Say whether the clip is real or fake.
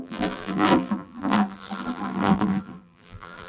fake